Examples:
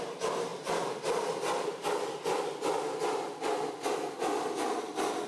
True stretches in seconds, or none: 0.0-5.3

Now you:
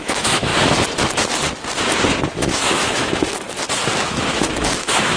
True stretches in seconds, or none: 0.5-2.3; 3.3-4.0

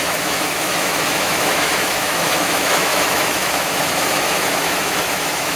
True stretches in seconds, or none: none

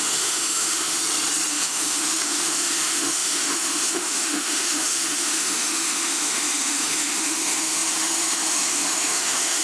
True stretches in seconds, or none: 1.0-1.5

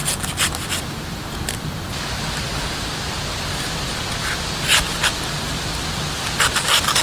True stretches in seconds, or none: 0.0-7.0

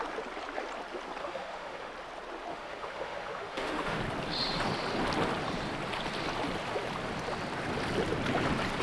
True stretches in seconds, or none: 0.0-1.2; 1.9-2.5; 4.0-8.8